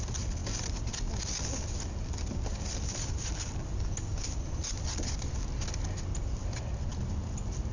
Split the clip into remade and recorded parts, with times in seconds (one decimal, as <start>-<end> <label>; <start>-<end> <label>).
0.0-7.7 recorded